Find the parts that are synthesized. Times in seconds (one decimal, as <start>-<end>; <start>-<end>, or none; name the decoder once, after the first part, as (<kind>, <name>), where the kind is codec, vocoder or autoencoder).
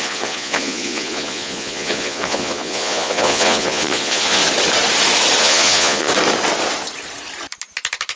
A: 0.0-4.4 (vocoder, Vocos); 5.4-6.1